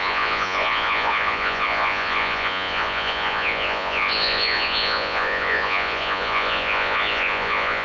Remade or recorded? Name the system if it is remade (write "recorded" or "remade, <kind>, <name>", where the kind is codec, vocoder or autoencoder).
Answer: remade, vocoder, Vocos